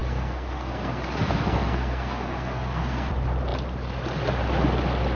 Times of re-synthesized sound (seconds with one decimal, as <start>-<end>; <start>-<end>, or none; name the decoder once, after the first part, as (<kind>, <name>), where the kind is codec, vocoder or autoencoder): 0.0-3.1 (codec, SNAC)